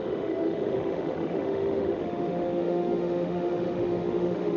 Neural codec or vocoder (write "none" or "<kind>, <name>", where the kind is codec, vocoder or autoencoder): autoencoder, DAC-VAE